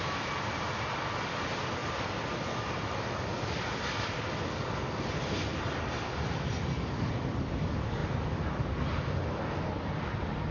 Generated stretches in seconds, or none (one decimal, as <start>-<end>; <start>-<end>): 8.0-8.8